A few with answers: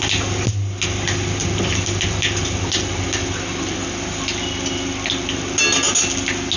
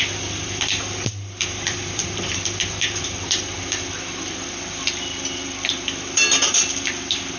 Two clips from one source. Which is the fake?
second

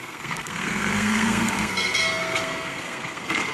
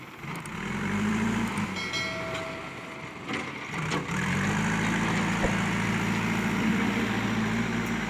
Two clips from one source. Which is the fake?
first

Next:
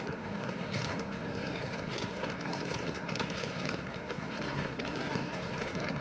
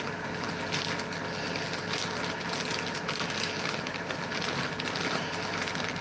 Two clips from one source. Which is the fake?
first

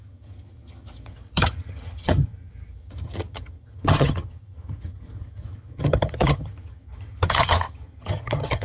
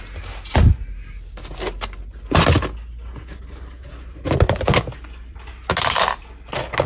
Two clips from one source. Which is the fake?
first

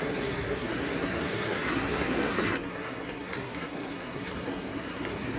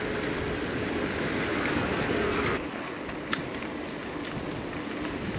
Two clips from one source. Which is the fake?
first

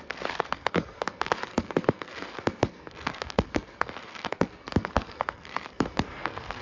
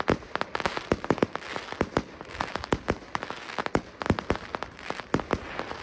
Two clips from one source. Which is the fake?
first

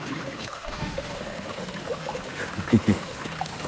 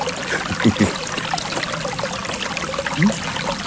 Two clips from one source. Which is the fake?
first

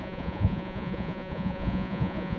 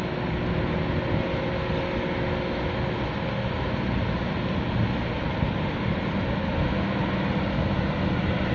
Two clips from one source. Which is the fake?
first